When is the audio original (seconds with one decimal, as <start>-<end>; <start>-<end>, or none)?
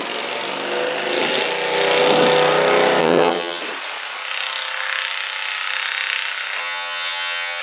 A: 0.0-3.0; 3.6-6.6